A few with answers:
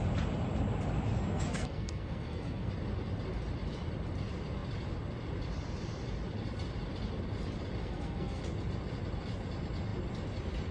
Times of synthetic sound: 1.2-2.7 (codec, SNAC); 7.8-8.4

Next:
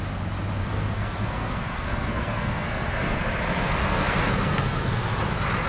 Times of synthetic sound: 0.6-3.2 (codec, SNAC); 3.8-5.0

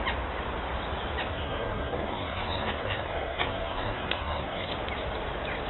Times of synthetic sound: 1.3-4.7 (codec, SNAC)

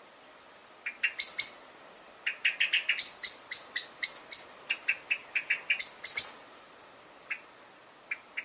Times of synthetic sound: none

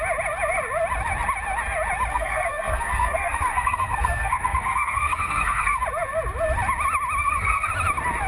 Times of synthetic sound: 2.1-5.8 (codec, SNAC); 7.2-7.7

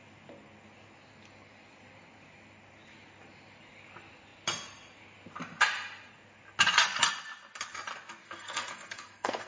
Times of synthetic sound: 8.2-9.5 (codec, SNAC)

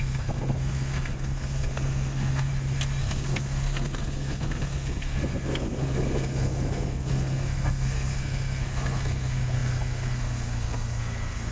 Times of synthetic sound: 0.0-2.5 (codec, SNAC); 3.0-11.5

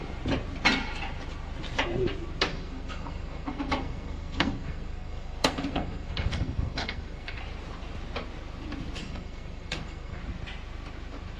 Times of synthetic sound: 2.5-7.4 (codec, SNAC); 9.0-10.2